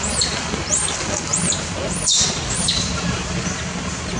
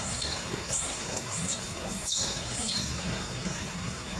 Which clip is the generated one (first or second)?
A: second